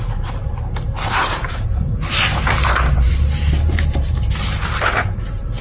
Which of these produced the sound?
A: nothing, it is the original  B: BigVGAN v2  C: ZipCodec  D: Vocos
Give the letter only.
B